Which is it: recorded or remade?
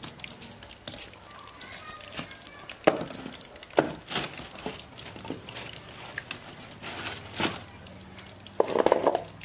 recorded